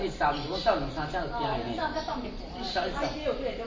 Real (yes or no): yes